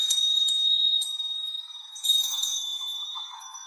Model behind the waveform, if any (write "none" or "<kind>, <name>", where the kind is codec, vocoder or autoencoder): codec, SNAC